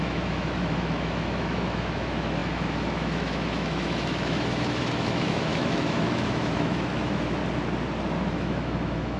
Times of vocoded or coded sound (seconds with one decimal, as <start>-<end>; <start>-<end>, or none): 0.0-7.4; 8.3-9.2